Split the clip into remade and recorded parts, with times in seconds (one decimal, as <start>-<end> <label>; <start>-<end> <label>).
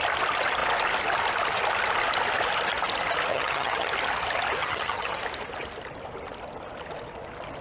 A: 0.0-3.3 recorded; 3.3-3.9 remade; 3.9-4.6 recorded; 4.6-5.2 remade; 5.2-7.6 recorded